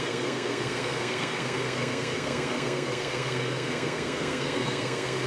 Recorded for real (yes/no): no